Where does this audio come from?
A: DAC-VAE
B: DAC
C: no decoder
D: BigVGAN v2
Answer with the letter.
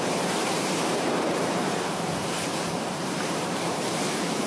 D